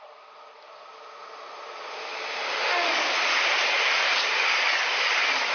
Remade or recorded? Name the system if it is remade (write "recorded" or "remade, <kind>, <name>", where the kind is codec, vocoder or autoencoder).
recorded